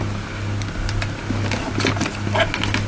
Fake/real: real